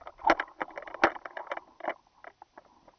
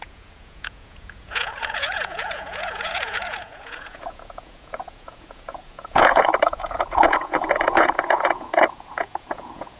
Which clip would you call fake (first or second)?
second